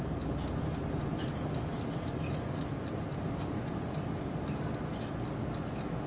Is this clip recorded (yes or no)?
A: yes